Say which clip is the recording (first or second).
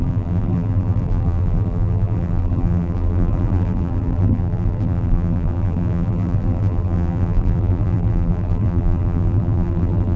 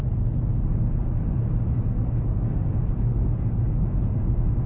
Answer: second